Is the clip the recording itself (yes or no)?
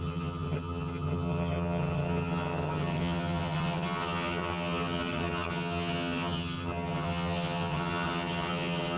no